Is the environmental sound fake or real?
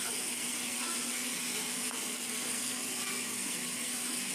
fake